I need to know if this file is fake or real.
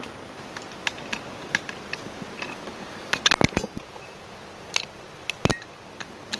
real